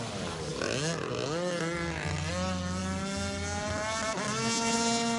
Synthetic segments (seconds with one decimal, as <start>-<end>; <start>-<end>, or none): none